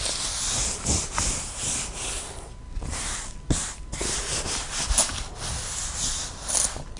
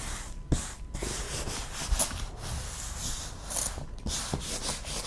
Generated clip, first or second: first